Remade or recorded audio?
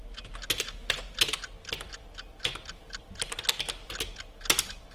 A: recorded